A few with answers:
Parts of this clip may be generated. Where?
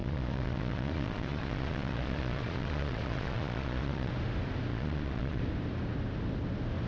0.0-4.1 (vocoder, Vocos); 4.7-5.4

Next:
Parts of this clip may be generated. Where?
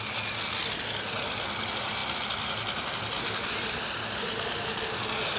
none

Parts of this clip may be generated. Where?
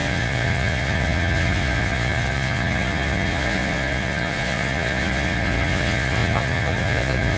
0.0-7.4 (vocoder, Vocos)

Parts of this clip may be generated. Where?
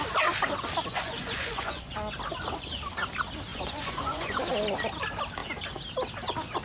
0.9-1.9 (vocoder, Vocos); 3.5-4.4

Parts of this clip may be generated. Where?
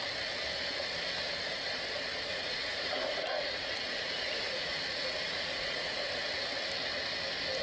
2.3-6.0 (vocoder, Vocos)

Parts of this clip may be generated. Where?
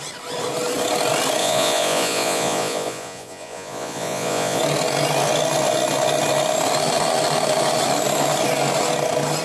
1.4-4.6 (vocoder, Vocos)